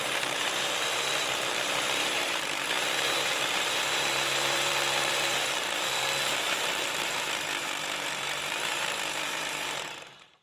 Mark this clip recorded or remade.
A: remade